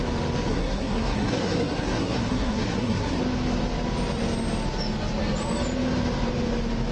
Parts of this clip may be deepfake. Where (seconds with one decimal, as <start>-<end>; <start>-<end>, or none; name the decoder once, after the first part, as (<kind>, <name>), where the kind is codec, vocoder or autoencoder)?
0.5-3.2 (codec, SNAC)

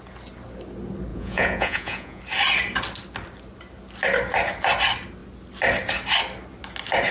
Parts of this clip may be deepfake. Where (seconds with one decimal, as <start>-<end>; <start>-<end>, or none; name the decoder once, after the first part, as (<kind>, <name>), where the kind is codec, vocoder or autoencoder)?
1.1-2.2 (vocoder, Vocos)

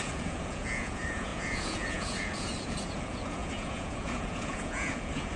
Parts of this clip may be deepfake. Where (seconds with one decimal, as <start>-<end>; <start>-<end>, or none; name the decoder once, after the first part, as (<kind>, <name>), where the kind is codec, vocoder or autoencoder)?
0.0-5.4 (vocoder, Vocos)

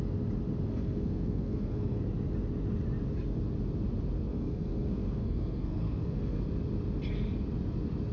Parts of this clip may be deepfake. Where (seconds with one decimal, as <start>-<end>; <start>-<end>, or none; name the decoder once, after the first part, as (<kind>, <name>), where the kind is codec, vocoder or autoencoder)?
0.7-2.0 (codec, SNAC); 4.3-6.4